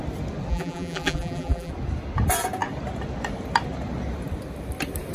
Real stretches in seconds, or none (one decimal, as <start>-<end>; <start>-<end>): 0.0-0.5; 1.7-5.1